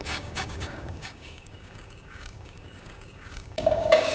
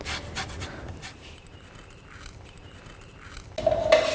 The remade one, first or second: first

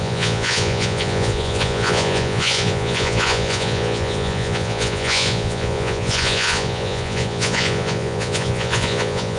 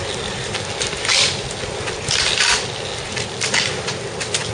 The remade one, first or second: first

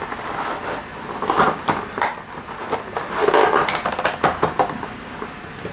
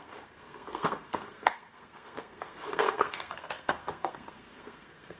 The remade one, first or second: second